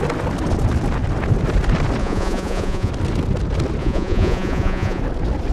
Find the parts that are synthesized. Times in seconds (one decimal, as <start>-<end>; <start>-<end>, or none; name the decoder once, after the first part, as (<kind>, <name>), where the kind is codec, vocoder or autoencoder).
2.0-2.9 (vocoder, Vocos); 3.8-5.0